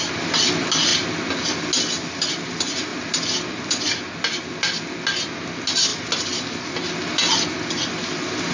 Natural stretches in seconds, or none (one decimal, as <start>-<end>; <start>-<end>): 0.0-8.5